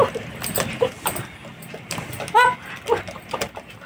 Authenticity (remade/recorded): recorded